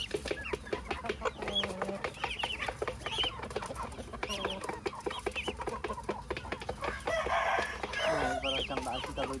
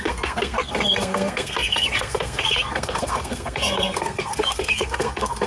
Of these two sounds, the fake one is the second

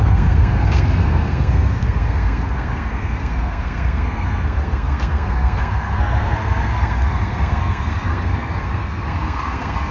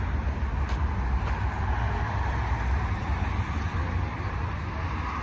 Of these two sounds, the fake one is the first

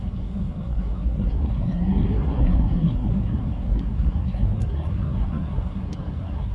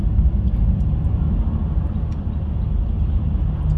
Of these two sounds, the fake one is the first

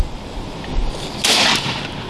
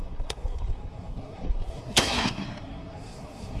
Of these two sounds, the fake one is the second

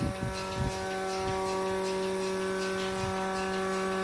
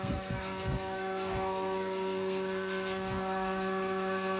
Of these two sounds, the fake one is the second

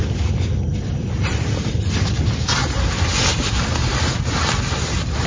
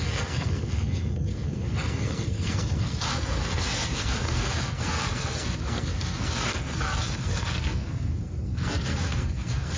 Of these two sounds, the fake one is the second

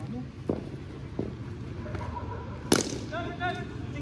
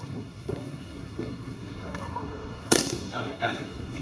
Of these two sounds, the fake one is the second